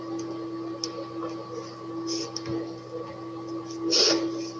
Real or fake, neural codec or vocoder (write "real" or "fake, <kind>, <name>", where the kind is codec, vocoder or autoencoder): real